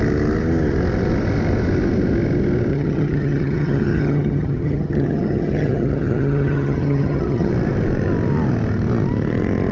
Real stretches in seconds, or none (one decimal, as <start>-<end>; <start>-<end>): 0.0-2.7; 7.5-9.7